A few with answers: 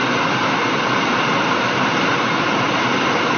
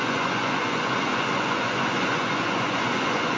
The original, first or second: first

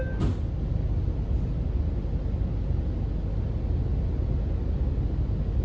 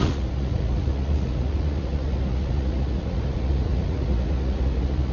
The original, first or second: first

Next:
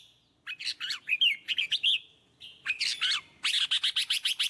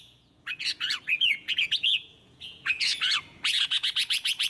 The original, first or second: first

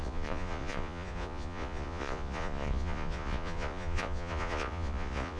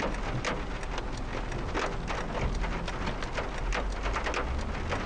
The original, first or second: second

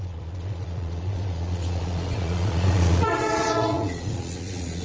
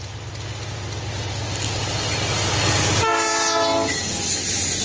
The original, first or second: second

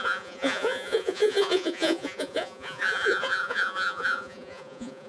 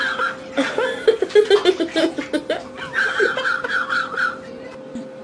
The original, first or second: second